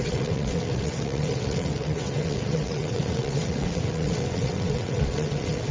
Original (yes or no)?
no